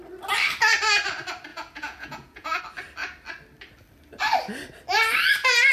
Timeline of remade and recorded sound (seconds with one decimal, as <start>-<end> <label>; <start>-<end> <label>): 0.0-1.5 recorded; 1.5-2.6 remade; 2.6-5.7 recorded